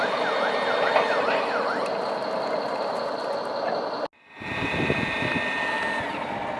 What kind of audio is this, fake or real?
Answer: real